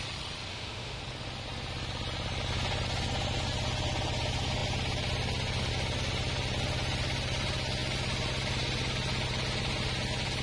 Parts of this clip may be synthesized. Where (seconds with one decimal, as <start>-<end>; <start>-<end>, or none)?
0.5-1.0